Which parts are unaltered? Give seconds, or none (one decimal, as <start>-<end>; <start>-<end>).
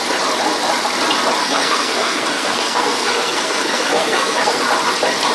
0.0-1.4; 4.6-5.3